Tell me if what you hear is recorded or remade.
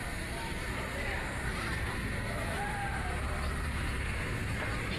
remade